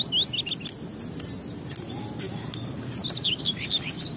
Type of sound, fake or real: real